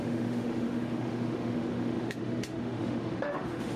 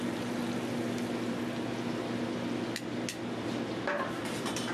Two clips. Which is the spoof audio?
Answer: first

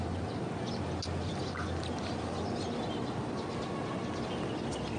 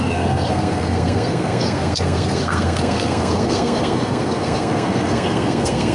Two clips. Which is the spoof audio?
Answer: second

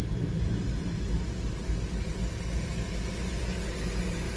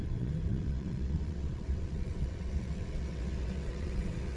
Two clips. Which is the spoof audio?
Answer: second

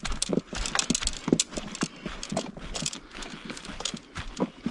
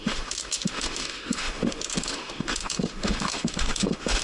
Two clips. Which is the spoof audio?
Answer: second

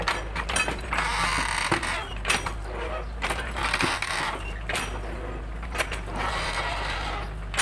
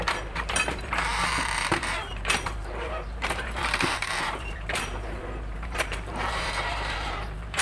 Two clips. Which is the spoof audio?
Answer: second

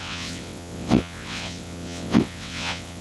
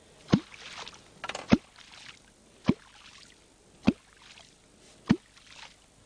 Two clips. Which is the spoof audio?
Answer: first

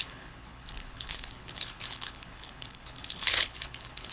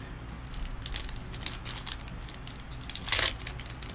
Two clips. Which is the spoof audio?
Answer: first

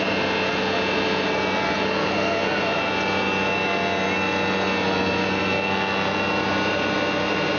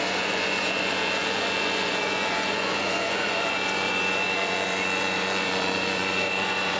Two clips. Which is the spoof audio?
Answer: second